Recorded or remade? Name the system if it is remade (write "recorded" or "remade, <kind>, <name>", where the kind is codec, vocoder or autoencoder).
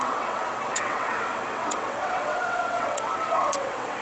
remade, vocoder, WaveNeXt